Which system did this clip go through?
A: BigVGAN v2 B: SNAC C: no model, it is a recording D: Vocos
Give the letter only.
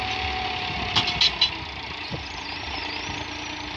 C